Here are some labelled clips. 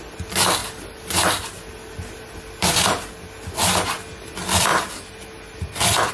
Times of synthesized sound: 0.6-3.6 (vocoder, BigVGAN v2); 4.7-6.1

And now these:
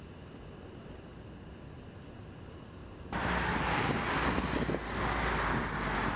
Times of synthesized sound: 1.1-1.7 (vocoder, BigVGAN v2); 2.8-4.0

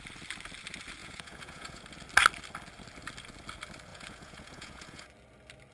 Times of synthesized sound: 1.0-1.8 (vocoder, Vocos); 3.9-5.1

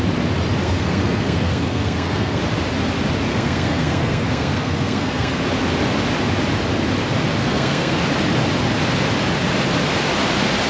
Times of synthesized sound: 0.6-2.4 (codec, SNAC); 3.3-5.4; 7.4-8.0

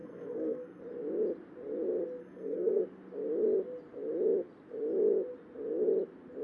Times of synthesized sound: 0.0-0.8 (codec, SNAC); 2.2-2.8

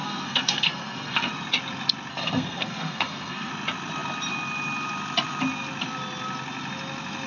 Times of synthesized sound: 0.0-1.3 (codec, SNAC); 2.1-3.5